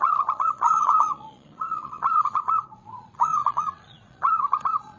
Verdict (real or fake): fake